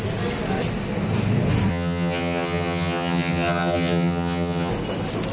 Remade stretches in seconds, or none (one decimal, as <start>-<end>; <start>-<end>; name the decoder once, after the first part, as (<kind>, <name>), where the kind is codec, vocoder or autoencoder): 1.7-4.7 (vocoder, HiFi-GAN)